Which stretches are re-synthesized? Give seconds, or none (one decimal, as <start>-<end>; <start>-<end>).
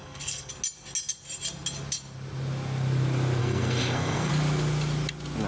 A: 0.0-0.5; 3.4-4.3